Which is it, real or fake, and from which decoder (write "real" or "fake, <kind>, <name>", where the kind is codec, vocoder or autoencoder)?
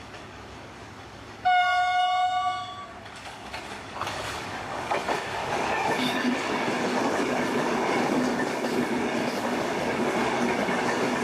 fake, codec, DAC